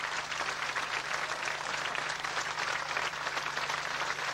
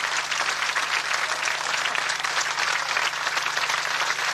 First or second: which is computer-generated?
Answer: first